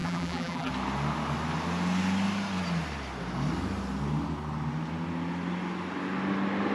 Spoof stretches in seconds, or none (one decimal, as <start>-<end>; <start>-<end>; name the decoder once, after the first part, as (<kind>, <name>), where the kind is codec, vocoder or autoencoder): 0.0-0.7 (vocoder, BigVGAN v2)

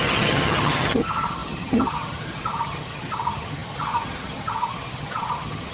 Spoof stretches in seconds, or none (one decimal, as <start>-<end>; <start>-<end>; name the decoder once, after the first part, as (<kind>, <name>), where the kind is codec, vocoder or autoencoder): 0.0-5.7 (vocoder, HiFi-GAN)

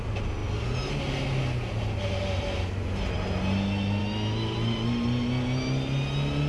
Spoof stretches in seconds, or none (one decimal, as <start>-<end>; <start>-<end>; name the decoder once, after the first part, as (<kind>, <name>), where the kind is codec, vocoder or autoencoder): none

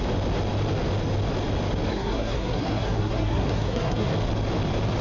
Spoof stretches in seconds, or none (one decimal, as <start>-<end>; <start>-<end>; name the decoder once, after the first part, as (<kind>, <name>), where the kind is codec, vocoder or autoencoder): 1.9-4.1 (codec, SNAC)

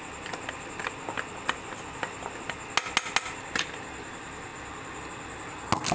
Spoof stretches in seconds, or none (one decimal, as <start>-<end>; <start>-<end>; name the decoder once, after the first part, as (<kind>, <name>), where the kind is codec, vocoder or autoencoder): none